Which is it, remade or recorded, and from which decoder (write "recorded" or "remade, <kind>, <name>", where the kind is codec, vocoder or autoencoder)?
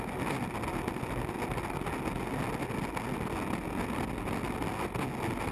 recorded